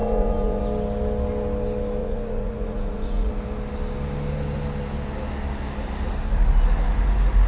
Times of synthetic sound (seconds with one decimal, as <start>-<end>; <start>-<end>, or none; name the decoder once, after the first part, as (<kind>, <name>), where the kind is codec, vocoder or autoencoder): 0.0-0.6 (vocoder, Vocos); 2.0-3.3